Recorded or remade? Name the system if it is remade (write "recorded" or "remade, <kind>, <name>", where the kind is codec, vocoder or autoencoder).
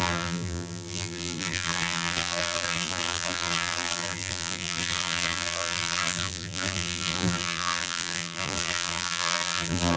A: remade, vocoder, BigVGAN v2